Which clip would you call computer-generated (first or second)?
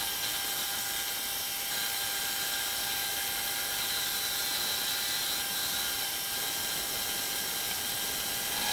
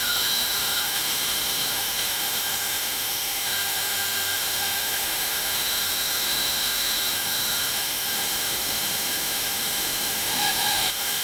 second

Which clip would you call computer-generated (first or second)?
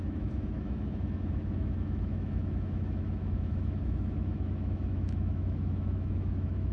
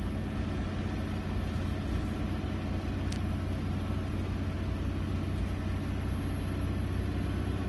first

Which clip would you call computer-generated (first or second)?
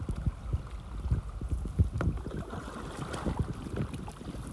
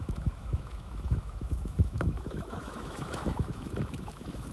second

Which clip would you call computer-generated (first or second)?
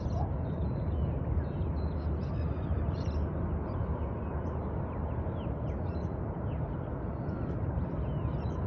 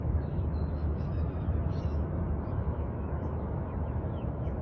second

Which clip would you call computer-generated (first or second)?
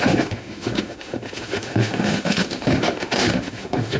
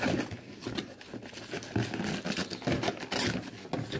first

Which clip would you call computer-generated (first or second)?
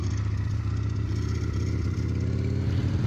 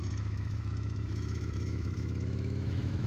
second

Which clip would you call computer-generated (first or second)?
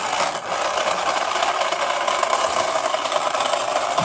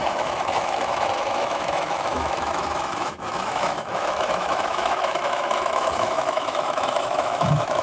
second